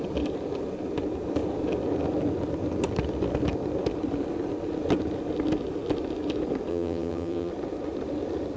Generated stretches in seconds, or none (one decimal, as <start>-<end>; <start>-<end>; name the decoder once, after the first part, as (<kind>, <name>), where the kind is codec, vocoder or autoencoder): 6.7-7.5 (vocoder, HiFi-GAN)